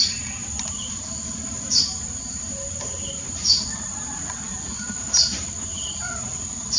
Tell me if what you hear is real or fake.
fake